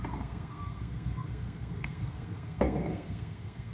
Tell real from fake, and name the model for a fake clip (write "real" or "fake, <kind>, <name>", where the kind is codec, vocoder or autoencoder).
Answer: fake, codec, SNAC